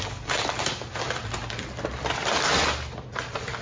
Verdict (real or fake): real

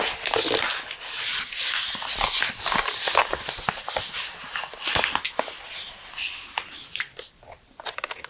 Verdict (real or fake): real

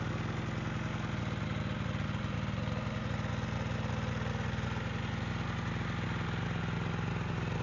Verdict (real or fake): real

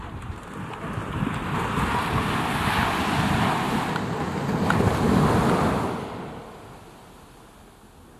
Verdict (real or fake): real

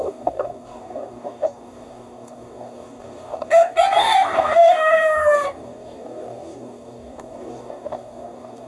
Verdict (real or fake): fake